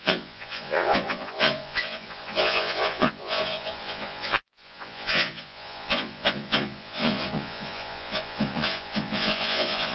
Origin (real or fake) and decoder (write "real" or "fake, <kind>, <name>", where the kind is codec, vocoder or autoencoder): fake, vocoder, Vocos